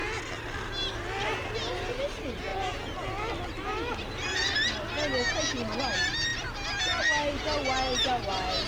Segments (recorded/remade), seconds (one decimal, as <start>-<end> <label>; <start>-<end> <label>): 0.0-8.7 recorded